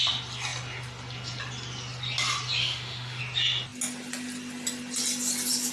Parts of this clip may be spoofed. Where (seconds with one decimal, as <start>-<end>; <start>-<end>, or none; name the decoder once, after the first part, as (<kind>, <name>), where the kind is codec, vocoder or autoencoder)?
2.6-3.2 (autoencoder, DAC-VAE)